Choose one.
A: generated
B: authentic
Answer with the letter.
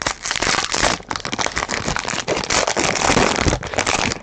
B